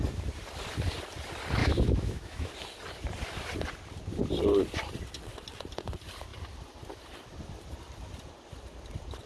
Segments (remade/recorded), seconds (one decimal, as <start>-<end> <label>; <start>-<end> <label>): 0.0-1.6 recorded; 1.6-2.5 remade; 2.5-9.3 recorded